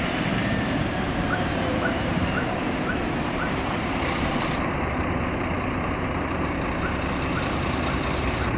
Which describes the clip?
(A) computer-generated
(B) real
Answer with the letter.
A